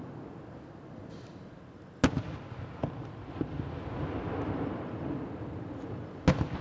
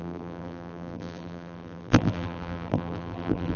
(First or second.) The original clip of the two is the first